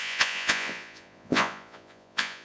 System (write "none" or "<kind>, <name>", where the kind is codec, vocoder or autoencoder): vocoder, Vocos